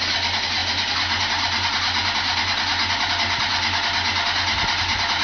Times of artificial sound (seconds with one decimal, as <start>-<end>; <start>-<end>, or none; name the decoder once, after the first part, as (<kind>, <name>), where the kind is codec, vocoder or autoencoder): none